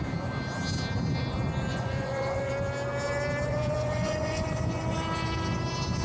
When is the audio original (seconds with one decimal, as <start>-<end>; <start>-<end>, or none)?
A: 0.0-1.7; 2.5-3.5; 4.8-6.0

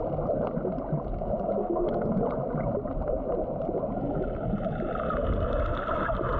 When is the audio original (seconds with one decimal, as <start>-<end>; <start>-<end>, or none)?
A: 0.0-1.6; 2.1-6.4

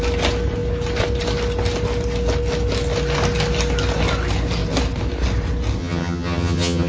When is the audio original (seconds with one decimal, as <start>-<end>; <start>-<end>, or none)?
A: 0.0-5.8

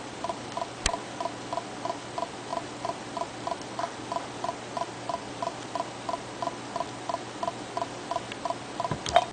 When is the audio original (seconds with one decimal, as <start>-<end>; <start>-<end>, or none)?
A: 0.0-9.3

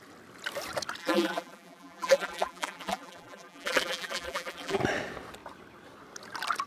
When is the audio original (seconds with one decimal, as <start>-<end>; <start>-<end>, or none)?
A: 0.0-1.0; 4.8-6.7

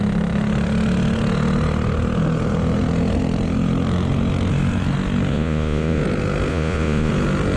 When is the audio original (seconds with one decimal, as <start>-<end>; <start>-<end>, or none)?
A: 0.0-5.3; 6.0-6.5; 7.1-7.6

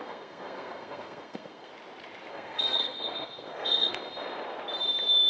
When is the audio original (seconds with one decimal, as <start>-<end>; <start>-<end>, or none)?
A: 1.7-2.3; 4.0-5.3

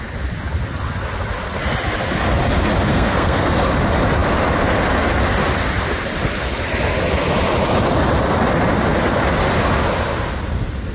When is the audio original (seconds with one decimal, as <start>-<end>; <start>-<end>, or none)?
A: 0.0-2.9; 3.6-10.9